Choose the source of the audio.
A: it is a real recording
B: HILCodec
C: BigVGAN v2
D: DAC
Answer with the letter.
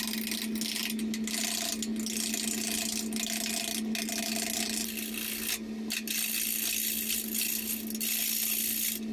A